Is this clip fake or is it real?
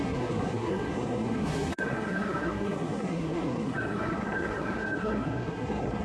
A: fake